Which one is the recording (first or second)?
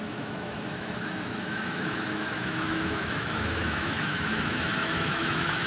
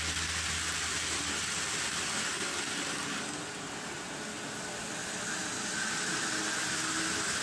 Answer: second